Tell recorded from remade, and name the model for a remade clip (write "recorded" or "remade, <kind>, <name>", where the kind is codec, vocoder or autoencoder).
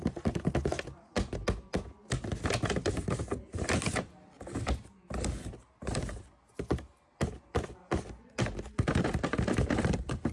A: recorded